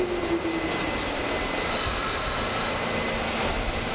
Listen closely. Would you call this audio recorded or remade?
recorded